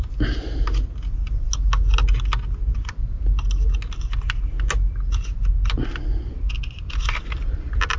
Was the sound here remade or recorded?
recorded